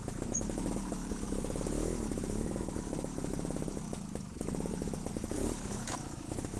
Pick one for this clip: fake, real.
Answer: fake